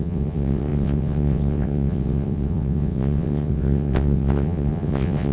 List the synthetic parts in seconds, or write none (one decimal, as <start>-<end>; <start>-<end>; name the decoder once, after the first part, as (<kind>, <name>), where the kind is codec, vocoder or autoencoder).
0.0-5.3 (vocoder, WaveNeXt)